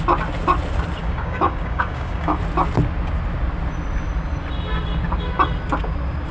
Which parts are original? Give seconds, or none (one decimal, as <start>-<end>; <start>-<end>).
0.0-1.0; 2.4-6.3